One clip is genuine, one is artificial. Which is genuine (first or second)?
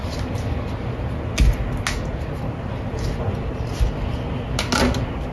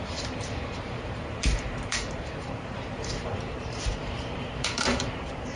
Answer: first